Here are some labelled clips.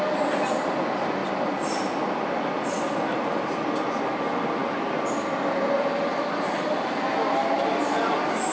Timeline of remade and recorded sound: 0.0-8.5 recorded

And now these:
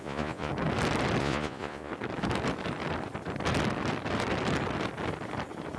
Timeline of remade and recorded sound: 0.0-0.5 remade; 0.5-1.2 recorded; 1.2-1.9 remade; 1.9-5.8 recorded

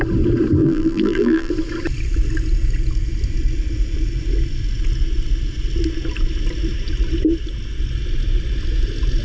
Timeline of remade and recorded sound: 0.0-0.6 recorded; 0.6-1.5 remade; 1.5-9.2 recorded

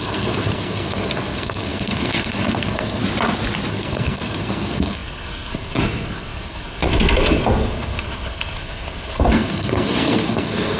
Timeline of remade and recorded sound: 0.0-3.0 remade; 3.0-3.7 recorded; 3.7-10.8 remade

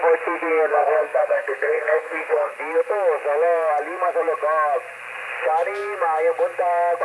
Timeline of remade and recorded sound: 0.0-0.7 recorded; 0.7-2.5 remade; 2.5-7.0 recorded

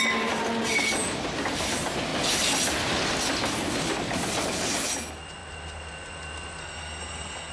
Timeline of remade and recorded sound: 0.0-6.6 recorded; 6.6-7.5 remade